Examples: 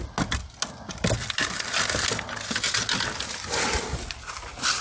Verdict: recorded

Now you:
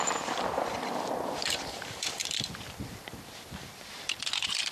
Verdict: remade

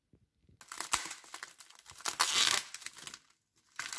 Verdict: recorded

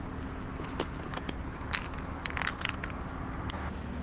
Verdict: recorded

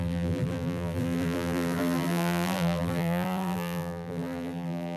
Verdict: remade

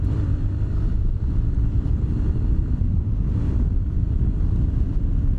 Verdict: remade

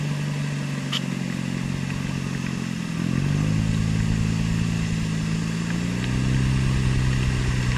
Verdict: recorded